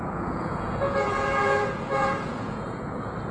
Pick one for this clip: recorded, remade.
remade